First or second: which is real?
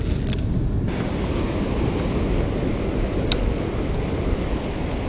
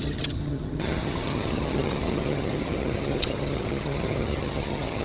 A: first